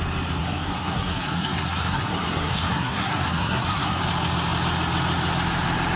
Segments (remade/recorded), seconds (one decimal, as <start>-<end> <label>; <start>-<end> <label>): 0.0-0.4 recorded; 0.4-4.0 remade; 4.0-6.0 recorded